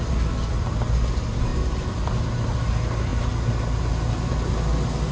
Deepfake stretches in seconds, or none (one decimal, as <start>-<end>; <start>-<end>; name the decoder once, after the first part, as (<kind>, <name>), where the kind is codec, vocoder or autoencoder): none